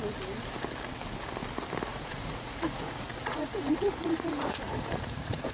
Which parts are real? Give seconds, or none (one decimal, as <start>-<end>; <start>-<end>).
0.0-1.9